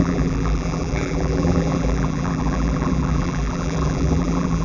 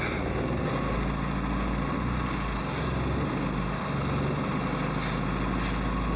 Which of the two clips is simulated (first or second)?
first